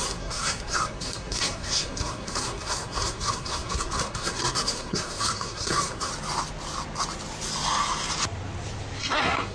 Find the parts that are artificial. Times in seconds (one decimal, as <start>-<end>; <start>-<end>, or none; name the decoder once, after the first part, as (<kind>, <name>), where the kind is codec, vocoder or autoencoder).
0.0-6.1 (codec, SNAC); 9.0-9.5